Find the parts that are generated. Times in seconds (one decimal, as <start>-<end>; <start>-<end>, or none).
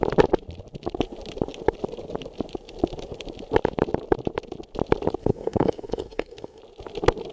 5.2-6.6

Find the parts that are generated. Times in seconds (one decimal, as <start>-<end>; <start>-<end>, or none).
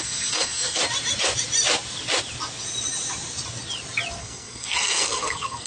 0.0-0.8; 4.2-5.7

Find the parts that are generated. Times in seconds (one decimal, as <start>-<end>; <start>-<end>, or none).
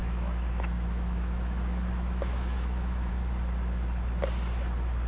0.0-3.1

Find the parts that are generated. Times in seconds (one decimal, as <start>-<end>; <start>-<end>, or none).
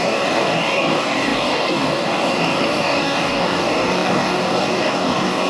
0.0-5.5